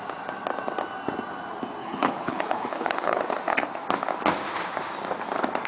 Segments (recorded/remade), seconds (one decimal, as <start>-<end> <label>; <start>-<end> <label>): 0.0-1.8 recorded; 1.8-3.2 remade; 3.2-5.7 recorded